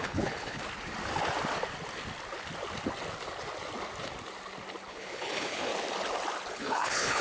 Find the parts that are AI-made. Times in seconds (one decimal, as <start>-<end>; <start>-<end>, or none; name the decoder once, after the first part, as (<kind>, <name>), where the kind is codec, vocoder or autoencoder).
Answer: 0.0-0.6 (codec, HILCodec); 4.9-5.7; 6.5-7.2